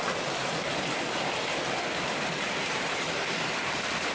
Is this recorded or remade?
remade